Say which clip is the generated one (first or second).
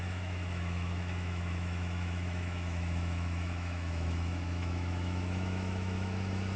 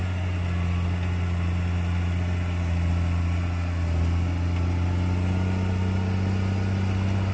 first